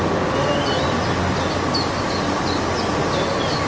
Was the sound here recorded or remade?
recorded